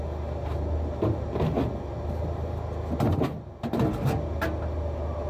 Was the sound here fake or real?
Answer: real